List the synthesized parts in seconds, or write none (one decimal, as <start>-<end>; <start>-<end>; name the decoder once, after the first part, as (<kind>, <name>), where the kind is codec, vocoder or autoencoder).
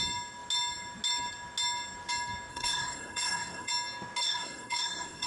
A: 2.5-3.7 (codec, SNAC); 4.2-5.3